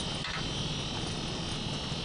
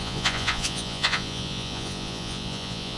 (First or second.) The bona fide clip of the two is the first